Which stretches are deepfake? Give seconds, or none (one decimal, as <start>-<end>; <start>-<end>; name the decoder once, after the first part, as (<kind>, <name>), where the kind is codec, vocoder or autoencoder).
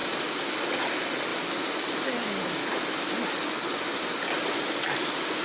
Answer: 0.0-0.8 (vocoder, BigVGAN v2); 1.3-4.4